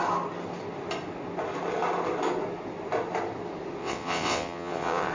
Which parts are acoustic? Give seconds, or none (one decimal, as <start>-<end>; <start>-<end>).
0.0-3.8